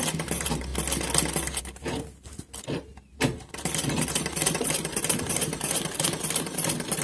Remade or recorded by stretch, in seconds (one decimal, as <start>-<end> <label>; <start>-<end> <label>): 0.0-0.7 remade; 0.7-1.6 recorded; 1.6-7.0 remade